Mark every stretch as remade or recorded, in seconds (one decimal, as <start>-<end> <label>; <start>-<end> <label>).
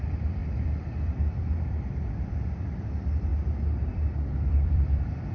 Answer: 0.0-3.3 remade; 3.3-3.9 recorded; 3.9-5.3 remade